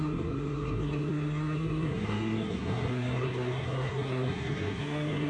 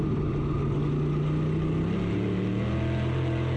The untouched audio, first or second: second